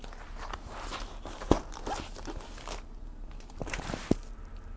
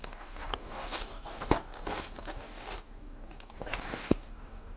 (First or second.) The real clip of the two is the first